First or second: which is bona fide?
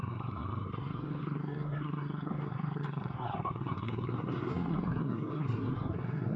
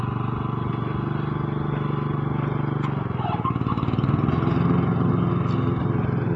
second